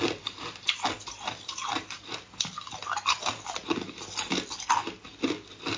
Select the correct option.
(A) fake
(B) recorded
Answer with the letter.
B